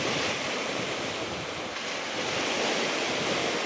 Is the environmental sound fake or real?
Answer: real